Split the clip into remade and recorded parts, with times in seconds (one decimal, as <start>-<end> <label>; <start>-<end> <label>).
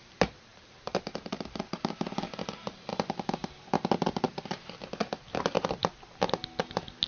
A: 0.0-0.5 recorded; 0.5-4.6 remade; 4.6-7.1 recorded